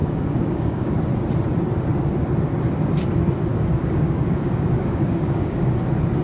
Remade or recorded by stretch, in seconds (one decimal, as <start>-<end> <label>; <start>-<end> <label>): 0.0-1.0 remade; 1.0-3.5 recorded; 3.5-5.7 remade; 5.7-6.2 recorded

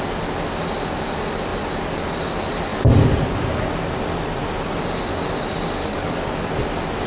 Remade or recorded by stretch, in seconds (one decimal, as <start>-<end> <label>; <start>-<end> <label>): 0.0-2.7 recorded; 2.7-3.3 remade; 3.3-5.8 recorded; 5.8-6.4 remade; 6.4-7.1 recorded

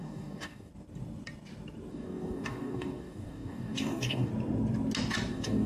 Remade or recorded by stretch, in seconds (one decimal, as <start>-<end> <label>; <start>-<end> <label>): 0.0-0.7 remade; 0.7-1.9 recorded; 1.9-4.3 remade; 4.3-5.3 recorded; 5.3-5.7 remade

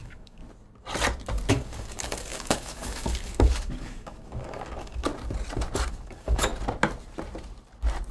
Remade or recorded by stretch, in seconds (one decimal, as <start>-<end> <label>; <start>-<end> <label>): 0.0-0.4 remade; 0.4-1.5 recorded; 1.5-5.1 remade; 5.1-5.9 recorded; 5.9-6.5 remade; 6.5-8.1 recorded

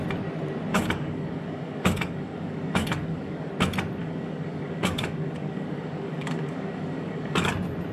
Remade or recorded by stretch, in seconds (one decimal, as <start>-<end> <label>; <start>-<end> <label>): 0.0-0.7 recorded; 0.7-3.5 remade; 3.5-4.0 recorded; 4.0-7.5 remade; 7.5-7.9 recorded